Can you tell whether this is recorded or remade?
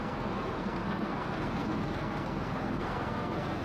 remade